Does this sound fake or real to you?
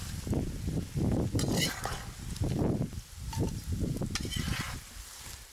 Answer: real